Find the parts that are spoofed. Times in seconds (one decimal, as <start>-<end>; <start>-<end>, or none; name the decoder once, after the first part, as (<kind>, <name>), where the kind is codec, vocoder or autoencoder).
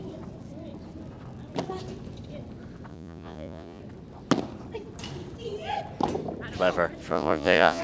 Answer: 2.9-3.8 (vocoder, Vocos); 7.1-7.8